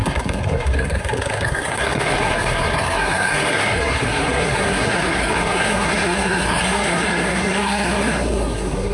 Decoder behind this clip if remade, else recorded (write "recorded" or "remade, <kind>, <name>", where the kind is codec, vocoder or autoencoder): remade, codec, SNAC